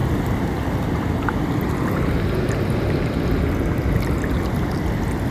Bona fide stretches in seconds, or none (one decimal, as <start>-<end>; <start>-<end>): 0.0-5.3